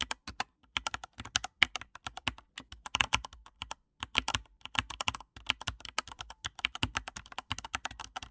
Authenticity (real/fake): real